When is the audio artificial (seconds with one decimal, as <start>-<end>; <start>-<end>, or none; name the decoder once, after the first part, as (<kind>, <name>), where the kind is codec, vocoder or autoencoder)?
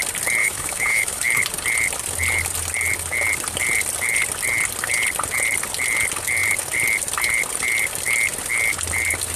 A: 0.4-1.4 (autoencoder, DAC-VAE)